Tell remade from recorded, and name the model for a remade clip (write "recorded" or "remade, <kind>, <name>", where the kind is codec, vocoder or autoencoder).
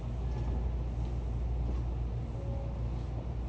recorded